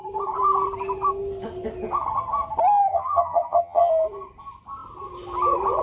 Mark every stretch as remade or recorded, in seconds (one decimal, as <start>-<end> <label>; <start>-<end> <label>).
0.0-2.9 recorded; 2.9-3.9 remade; 3.9-5.8 recorded